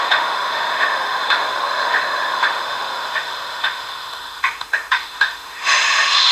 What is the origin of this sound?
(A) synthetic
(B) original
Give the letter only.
A